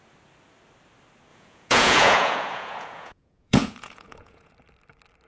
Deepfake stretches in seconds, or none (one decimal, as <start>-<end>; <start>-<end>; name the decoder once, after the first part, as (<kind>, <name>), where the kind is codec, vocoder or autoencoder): 1.3-4.5 (vocoder, Vocos)